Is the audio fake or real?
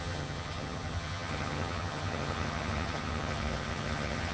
fake